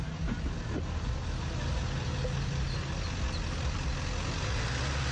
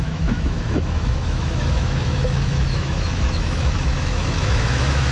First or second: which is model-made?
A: second